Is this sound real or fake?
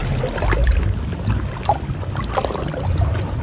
real